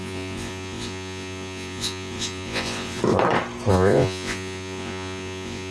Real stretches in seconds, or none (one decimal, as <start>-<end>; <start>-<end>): 3.0-3.7